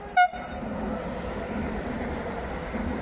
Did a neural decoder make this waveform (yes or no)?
no